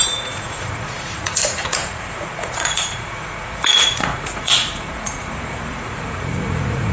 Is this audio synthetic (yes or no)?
yes